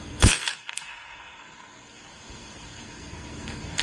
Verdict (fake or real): fake